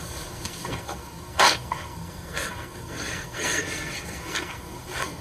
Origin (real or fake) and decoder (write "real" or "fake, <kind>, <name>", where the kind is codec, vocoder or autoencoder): fake, codec, SNAC